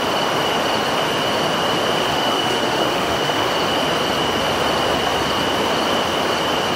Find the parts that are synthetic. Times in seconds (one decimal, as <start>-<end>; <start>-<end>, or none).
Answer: 2.1-3.5